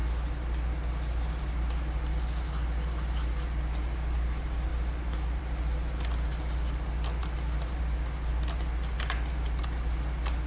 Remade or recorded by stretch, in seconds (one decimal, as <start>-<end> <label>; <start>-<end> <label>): 0.0-4.7 recorded; 4.7-5.4 remade; 5.4-6.3 recorded; 6.3-7.8 remade; 7.8-8.3 recorded; 8.3-9.3 remade; 9.3-10.5 recorded